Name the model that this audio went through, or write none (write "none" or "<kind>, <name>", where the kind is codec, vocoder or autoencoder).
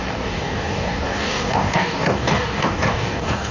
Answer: codec, DAC